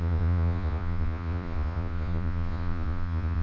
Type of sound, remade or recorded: remade